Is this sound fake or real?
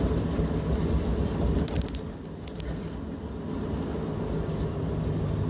real